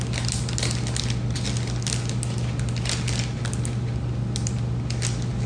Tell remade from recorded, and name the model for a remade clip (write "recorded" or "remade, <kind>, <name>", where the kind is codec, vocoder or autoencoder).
recorded